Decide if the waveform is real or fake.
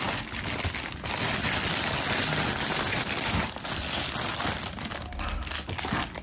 real